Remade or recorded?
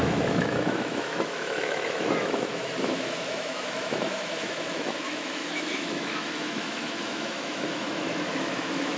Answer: remade